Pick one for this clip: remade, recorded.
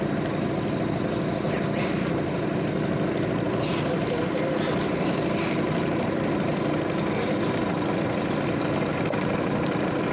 recorded